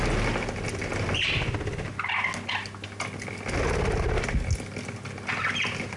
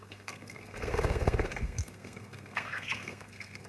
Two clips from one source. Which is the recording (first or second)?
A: first